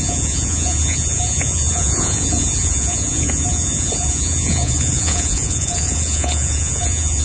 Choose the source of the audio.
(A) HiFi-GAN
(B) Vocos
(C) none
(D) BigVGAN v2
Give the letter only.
B